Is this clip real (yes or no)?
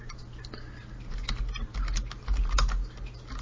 yes